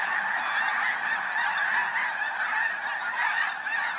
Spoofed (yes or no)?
no